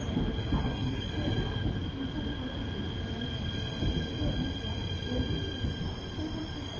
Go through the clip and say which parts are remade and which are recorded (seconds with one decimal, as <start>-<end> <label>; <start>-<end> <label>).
0.0-0.6 recorded; 0.6-1.1 remade; 1.1-6.8 recorded